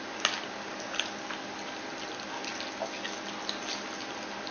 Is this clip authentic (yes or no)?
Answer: yes